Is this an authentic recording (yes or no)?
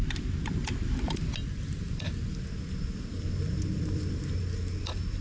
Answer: yes